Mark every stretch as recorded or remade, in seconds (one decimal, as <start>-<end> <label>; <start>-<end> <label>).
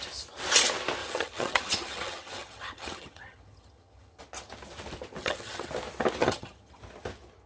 0.0-1.0 recorded; 1.0-4.2 remade; 4.2-5.2 recorded; 5.2-5.7 remade; 5.7-6.2 recorded; 6.2-6.8 remade; 6.8-7.5 recorded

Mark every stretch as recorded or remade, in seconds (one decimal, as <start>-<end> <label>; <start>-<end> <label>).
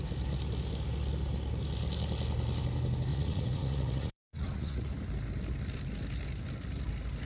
0.0-3.1 recorded; 3.1-4.9 remade; 4.9-7.2 recorded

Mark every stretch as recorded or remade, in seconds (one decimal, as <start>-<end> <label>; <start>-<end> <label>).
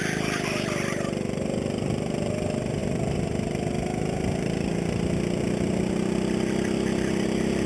0.0-7.7 recorded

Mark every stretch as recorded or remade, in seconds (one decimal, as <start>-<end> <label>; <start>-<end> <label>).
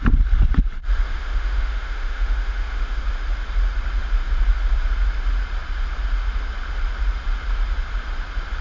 0.0-1.2 recorded; 1.2-3.0 remade; 3.0-8.6 recorded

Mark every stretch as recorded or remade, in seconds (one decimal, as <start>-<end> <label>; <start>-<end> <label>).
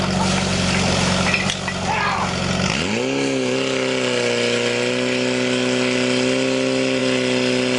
0.0-7.8 recorded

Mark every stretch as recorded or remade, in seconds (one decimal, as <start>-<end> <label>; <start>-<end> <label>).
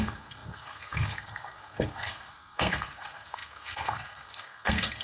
0.0-5.0 remade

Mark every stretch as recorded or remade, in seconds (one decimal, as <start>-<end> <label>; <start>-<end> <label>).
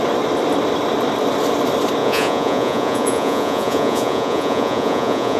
0.0-2.0 recorded; 2.0-5.4 remade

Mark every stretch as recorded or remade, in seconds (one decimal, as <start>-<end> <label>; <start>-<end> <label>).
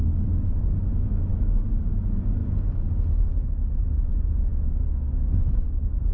0.0-0.9 remade; 0.9-6.1 recorded